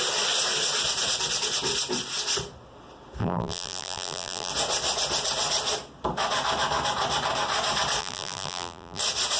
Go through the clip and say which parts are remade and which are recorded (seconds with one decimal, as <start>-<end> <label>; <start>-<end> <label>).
0.0-3.2 recorded; 3.2-4.5 remade; 4.5-8.0 recorded; 8.0-9.0 remade; 9.0-9.4 recorded